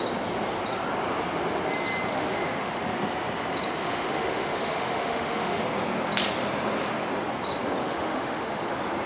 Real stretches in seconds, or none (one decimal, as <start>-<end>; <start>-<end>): 0.0-2.1; 2.8-3.8; 5.6-7.8; 8.7-9.1